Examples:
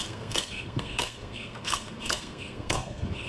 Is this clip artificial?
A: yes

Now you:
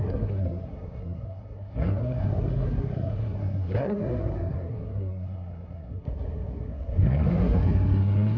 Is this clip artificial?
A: yes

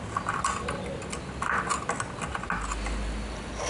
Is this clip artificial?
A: no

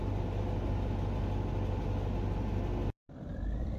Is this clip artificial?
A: no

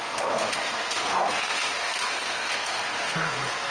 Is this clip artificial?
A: yes